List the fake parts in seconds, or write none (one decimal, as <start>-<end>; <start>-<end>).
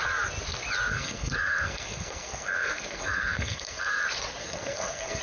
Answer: 0.9-4.0; 4.4-5.2